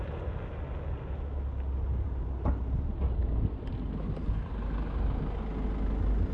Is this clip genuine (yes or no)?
yes